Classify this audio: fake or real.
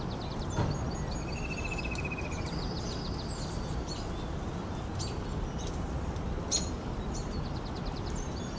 real